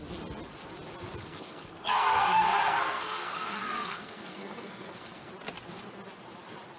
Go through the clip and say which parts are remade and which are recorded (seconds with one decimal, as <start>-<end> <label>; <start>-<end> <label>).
0.0-1.2 recorded; 1.2-5.3 remade; 5.3-6.8 recorded